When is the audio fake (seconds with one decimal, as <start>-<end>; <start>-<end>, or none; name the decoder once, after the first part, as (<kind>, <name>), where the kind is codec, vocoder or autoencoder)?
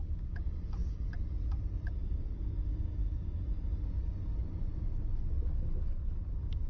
none